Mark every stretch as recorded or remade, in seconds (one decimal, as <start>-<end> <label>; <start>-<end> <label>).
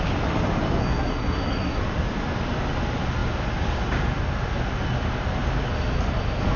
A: 0.0-0.8 recorded; 0.8-1.8 remade; 1.8-6.6 recorded